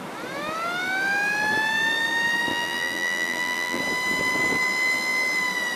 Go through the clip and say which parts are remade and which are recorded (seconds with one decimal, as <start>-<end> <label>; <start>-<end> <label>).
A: 0.0-2.5 recorded; 2.5-3.8 remade; 3.8-5.8 recorded